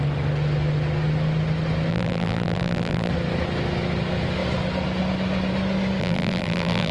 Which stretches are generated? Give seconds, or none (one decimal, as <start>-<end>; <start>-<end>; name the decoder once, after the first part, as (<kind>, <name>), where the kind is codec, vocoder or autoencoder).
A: 1.9-3.1 (vocoder, BigVGAN v2); 6.0-6.9